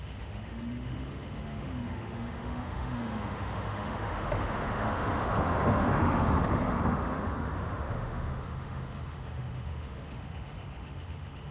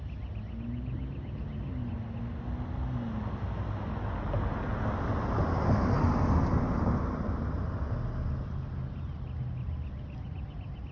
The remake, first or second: first